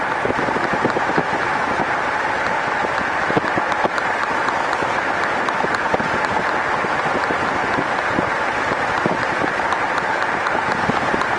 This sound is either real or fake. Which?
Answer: real